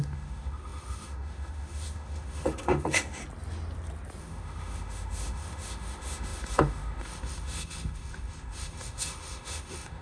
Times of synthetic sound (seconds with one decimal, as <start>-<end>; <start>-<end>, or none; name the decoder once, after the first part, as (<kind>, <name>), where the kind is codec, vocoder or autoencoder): 0.0-3.2 (autoencoder, DAC-VAE); 4.2-10.0